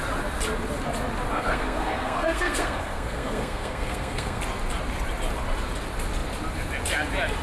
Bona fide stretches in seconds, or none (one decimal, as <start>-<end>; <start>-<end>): 0.0-1.3; 4.4-7.4